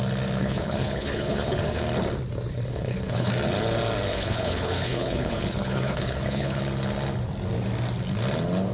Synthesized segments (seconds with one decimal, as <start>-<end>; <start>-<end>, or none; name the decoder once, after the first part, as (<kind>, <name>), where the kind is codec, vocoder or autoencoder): 0.4-1.8 (codec, HILCodec); 2.5-3.3; 4.1-6.6